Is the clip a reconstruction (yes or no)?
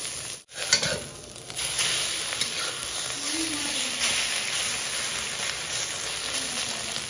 no